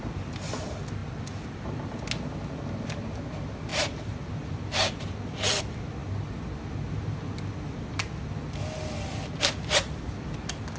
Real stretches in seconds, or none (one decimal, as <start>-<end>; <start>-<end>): 0.0-10.8